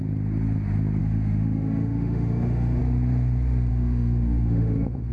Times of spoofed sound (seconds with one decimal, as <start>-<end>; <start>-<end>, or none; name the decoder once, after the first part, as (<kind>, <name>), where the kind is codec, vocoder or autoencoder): 1.0-2.8 (autoencoder, DAC-VAE); 3.7-5.1